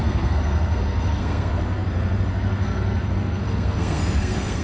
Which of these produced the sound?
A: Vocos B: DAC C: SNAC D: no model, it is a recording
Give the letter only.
C